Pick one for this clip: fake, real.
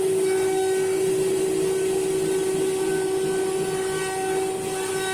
real